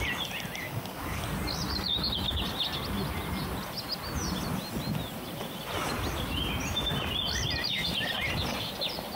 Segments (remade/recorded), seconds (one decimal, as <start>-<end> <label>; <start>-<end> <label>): 0.0-0.6 recorded; 0.6-1.2 remade; 1.2-9.2 recorded

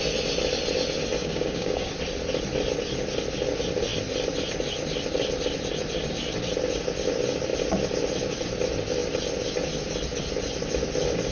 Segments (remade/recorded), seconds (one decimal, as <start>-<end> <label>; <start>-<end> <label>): 0.0-1.2 recorded; 1.2-1.9 remade; 1.9-11.3 recorded

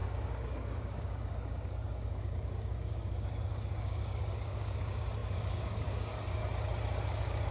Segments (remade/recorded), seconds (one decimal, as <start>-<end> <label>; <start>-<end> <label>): 0.0-6.4 remade; 6.4-7.1 recorded; 7.1-7.5 remade

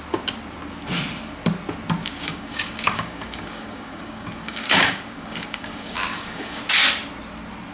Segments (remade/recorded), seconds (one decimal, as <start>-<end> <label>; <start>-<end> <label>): 0.0-2.0 recorded; 2.0-6.6 remade; 6.6-7.7 recorded